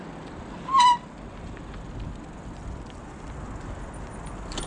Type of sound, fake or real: real